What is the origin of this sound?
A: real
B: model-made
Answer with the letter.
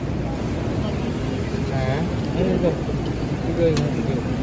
A